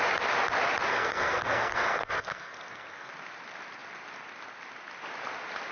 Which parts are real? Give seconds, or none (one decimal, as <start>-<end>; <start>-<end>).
0.0-0.9; 3.1-5.7